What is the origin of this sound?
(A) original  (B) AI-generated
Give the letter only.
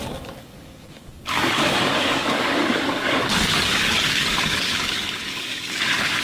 B